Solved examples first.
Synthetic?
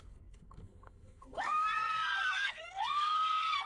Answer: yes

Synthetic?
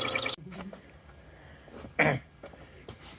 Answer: no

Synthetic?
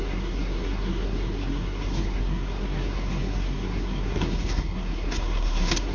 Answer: yes